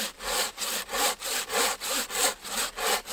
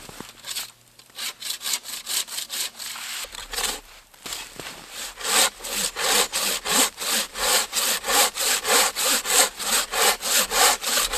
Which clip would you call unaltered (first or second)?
first